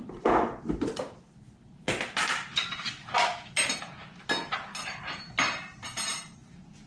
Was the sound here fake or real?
real